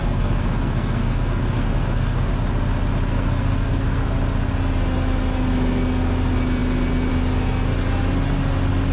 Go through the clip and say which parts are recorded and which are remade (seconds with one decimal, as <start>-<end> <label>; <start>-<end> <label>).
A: 0.0-2.3 remade; 2.3-3.1 recorded; 3.1-4.1 remade; 4.1-8.9 recorded